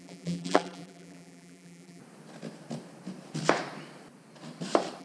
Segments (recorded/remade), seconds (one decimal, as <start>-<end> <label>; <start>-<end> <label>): 0.0-2.0 remade; 2.0-5.0 recorded